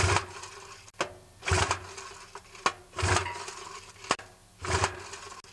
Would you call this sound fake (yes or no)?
no